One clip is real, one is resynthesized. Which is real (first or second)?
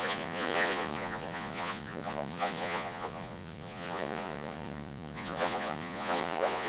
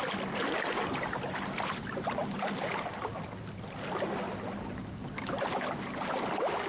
second